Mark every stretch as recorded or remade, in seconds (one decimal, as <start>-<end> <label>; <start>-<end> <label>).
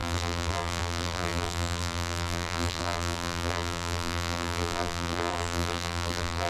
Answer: 0.0-6.5 remade